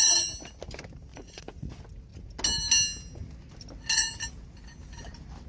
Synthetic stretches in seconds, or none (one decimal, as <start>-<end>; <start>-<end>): 1.1-1.7